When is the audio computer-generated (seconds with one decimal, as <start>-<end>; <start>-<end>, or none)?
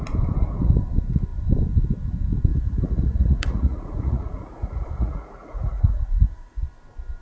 2.5-6.6